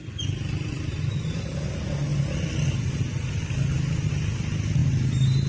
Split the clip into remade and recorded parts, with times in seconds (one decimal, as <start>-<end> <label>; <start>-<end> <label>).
0.0-5.5 recorded